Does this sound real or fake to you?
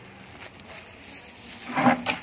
real